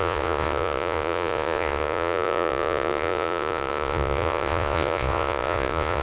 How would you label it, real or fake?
fake